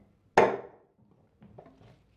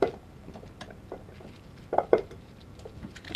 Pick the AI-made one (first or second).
second